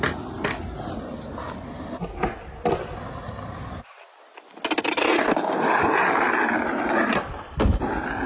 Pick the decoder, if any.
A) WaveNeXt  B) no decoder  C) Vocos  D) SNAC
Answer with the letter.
B